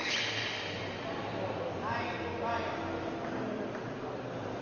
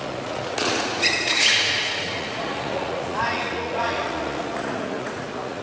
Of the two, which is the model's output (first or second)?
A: second